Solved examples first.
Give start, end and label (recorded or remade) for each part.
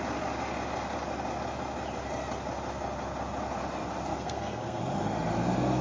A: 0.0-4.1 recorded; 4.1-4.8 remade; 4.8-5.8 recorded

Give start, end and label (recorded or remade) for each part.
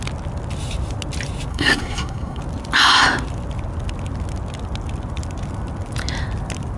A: 0.0-1.5 recorded; 1.5-2.4 remade; 2.4-6.8 recorded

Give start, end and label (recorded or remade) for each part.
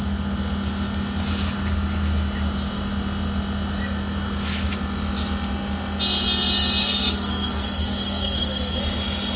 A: 0.0-6.8 recorded; 6.8-8.8 remade; 8.8-9.4 recorded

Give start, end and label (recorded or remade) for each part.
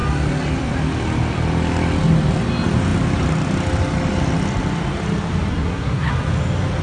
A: 0.0-5.5 recorded; 5.5-6.1 remade; 6.1-6.8 recorded